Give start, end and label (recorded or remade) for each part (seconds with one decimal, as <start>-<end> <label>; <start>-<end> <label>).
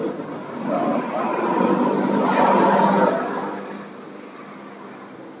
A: 0.0-1.3 recorded; 1.3-2.6 remade; 2.6-5.4 recorded